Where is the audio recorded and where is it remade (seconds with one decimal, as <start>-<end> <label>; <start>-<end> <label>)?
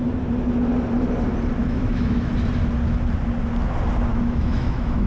0.0-1.6 recorded; 1.6-2.3 remade; 2.3-4.1 recorded; 4.1-5.1 remade